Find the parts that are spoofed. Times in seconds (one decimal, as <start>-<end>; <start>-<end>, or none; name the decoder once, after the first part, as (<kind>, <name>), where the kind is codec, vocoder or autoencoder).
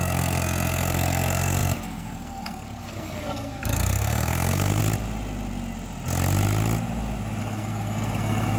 0.0-4.8 (codec, SNAC); 7.4-8.6